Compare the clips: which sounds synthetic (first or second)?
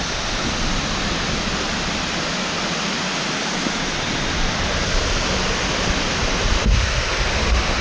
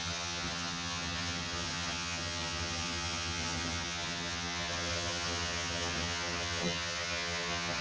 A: second